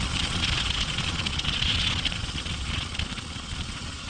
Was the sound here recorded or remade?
remade